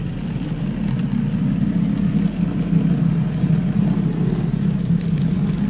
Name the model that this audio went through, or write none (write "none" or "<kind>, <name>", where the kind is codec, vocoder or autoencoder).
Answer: none